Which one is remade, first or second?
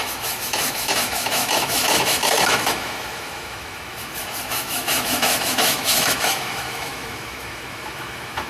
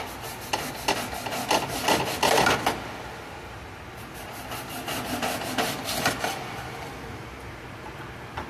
first